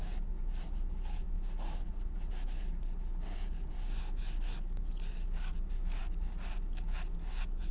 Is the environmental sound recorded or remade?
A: recorded